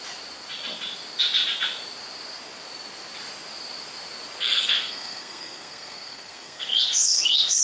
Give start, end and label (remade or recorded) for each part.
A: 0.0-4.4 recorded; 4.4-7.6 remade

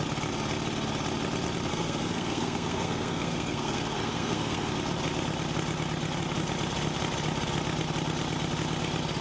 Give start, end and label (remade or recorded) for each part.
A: 0.0-1.7 recorded; 1.7-4.7 remade; 4.7-9.2 recorded

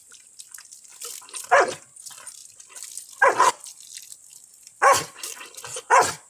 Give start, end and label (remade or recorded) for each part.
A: 0.0-6.3 recorded

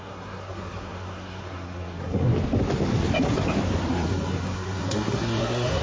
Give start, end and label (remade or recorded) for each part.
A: 0.0-2.3 remade; 2.3-3.9 recorded; 3.9-5.8 remade

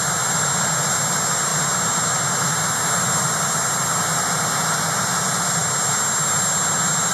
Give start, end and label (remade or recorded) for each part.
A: 0.0-7.1 recorded

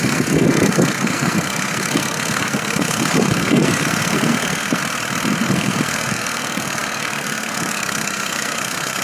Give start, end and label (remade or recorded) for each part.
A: 0.0-4.8 remade; 4.8-5.4 recorded; 5.4-9.0 remade

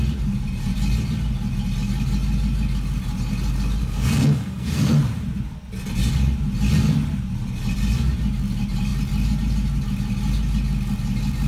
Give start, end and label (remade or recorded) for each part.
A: 0.0-3.8 recorded; 3.8-5.0 remade; 5.0-11.5 recorded

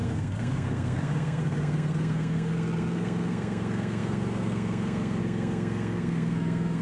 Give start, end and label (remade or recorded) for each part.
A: 0.0-6.8 remade